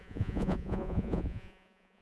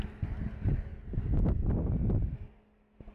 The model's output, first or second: first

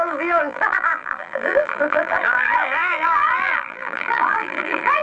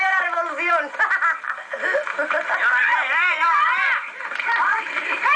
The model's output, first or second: first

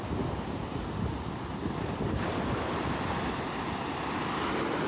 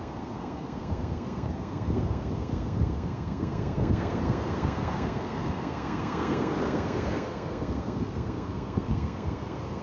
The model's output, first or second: second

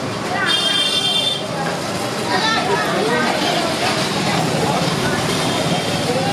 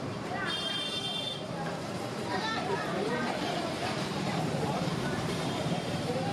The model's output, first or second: second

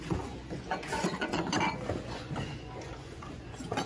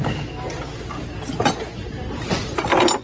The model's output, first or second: first